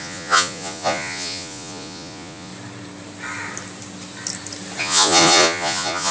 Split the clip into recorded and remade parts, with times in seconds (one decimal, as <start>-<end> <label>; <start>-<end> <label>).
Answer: 0.0-2.5 remade; 2.5-4.8 recorded; 4.8-6.1 remade